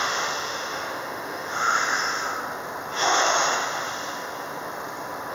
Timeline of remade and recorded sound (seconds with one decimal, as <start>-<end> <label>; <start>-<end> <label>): 0.0-1.8 remade; 1.8-5.3 recorded